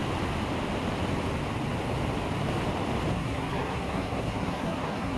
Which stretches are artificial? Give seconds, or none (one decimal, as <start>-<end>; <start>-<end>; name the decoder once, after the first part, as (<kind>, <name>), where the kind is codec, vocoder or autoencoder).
3.1-5.2 (codec, SNAC)